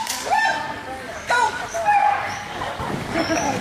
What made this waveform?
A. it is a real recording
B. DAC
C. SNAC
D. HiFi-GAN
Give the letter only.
B